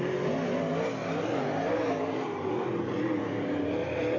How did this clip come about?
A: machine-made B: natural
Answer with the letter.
B